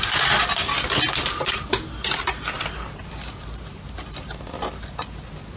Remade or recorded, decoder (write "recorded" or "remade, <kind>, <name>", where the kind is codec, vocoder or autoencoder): recorded